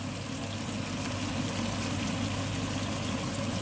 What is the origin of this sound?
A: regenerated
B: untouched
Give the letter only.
B